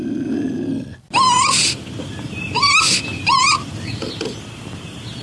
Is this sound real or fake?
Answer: real